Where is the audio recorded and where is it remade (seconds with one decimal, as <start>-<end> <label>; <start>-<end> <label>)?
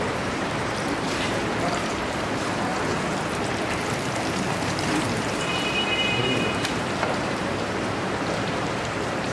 0.0-2.7 remade; 2.7-4.3 recorded; 4.3-9.3 remade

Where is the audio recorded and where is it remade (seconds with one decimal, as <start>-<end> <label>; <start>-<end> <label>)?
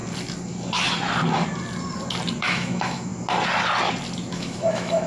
0.0-2.4 recorded; 2.4-3.1 remade; 3.1-4.3 recorded; 4.3-5.1 remade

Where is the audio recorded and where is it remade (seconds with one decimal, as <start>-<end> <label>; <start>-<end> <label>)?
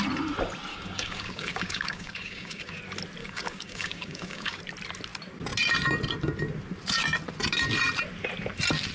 0.0-0.7 recorded; 0.7-2.8 remade; 2.8-3.2 recorded; 3.2-4.6 remade; 4.6-8.9 recorded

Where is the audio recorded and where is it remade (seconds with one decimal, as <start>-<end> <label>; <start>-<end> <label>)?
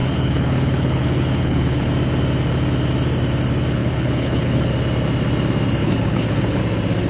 0.0-1.9 remade; 1.9-3.8 recorded; 3.8-4.7 remade; 4.7-5.8 recorded; 5.8-6.6 remade; 6.6-7.1 recorded